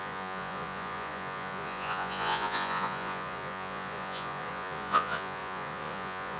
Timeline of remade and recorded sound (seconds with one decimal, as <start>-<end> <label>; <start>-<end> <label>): 0.0-6.4 remade